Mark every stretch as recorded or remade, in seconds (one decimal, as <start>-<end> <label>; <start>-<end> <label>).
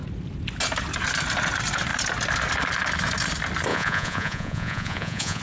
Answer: 0.0-3.7 recorded; 3.7-5.4 remade